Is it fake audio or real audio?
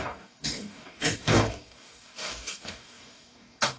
fake